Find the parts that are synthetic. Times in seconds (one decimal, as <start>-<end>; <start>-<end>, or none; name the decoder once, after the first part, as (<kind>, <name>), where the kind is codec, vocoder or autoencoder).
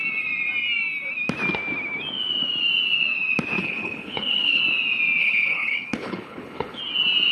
3.6-4.6 (codec, HILCodec); 5.2-6.8